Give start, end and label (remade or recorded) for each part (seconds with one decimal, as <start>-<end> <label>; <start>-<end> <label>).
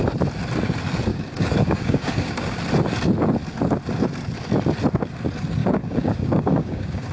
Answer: 0.0-1.1 recorded; 1.1-2.6 remade; 2.6-5.6 recorded; 5.6-7.1 remade